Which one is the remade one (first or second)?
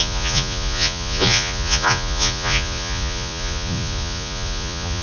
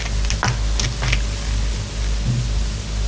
first